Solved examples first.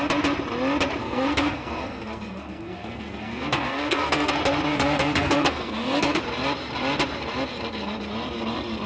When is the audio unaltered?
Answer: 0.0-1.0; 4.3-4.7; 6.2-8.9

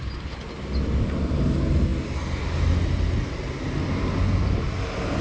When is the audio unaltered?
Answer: 0.0-5.2

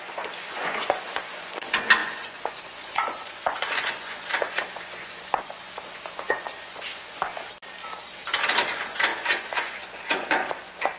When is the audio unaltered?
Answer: 7.3-8.7

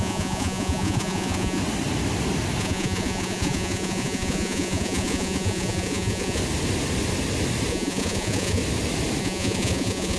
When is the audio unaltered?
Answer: 1.6-2.6; 6.4-7.7; 8.6-9.2

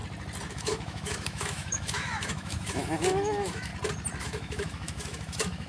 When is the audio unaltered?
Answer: 0.0-0.5; 3.7-4.2

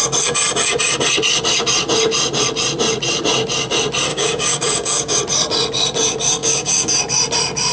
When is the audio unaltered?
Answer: 0.0-4.1; 5.2-6.4; 7.0-7.7

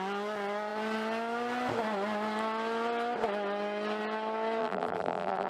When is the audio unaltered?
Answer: 0.0-4.6

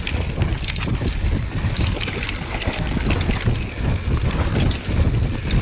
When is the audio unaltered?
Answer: 0.0-5.6